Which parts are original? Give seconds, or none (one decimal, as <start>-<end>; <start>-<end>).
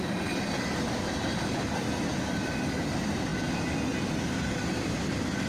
0.0-5.5